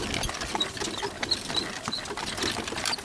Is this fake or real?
real